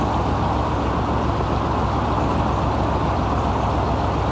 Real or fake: real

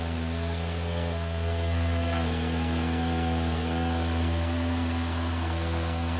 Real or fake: fake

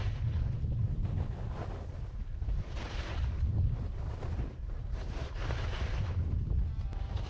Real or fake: real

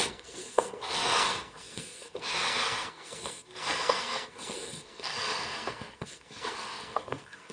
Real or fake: fake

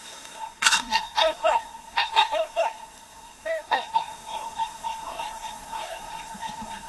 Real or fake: fake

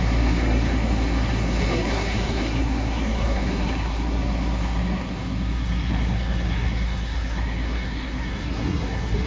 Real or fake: fake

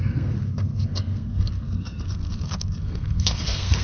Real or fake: fake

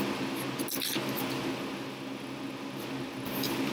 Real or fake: real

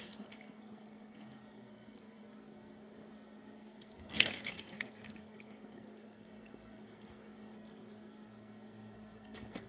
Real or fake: fake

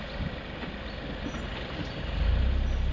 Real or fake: real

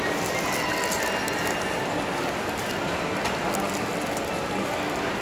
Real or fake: real